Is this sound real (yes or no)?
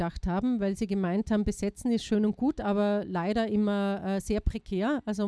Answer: yes